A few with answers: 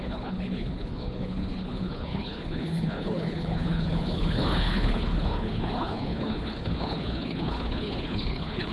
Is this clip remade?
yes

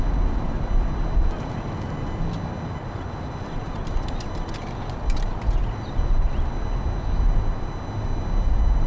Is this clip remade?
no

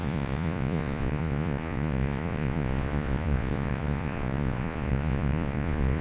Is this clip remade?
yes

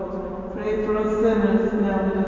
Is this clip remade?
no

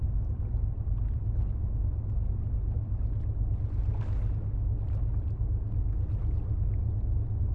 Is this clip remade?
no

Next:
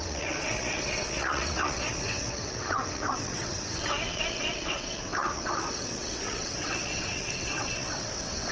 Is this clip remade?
yes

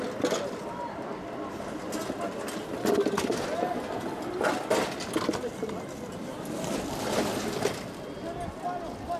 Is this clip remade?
no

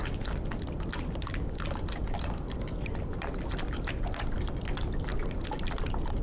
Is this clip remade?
no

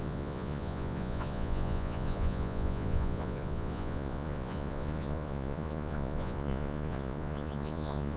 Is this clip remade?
yes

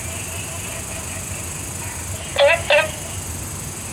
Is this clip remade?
no